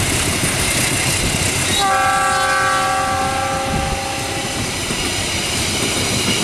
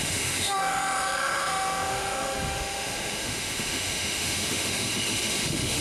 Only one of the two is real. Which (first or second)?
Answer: first